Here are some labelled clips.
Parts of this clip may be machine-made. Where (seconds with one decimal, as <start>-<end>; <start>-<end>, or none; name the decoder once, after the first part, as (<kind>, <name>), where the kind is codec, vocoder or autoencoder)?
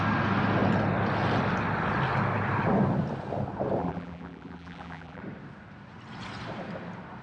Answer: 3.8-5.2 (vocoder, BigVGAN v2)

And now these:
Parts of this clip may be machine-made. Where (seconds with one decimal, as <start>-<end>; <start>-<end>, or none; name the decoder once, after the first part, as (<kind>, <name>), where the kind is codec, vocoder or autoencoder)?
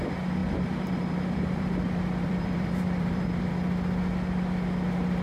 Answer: 0.4-3.5 (vocoder, BigVGAN v2)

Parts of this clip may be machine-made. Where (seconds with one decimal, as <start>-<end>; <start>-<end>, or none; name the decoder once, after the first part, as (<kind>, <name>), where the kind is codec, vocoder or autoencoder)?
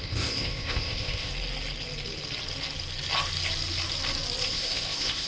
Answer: 0.0-1.3 (codec, ZipCodec); 4.5-5.3